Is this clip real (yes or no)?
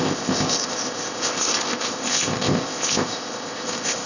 no